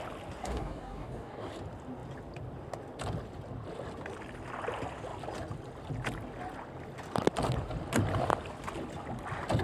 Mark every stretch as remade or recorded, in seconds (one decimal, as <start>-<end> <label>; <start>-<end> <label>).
0.0-0.4 recorded; 0.4-1.5 remade; 1.5-9.6 recorded